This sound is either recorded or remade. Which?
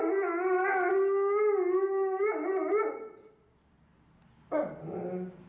recorded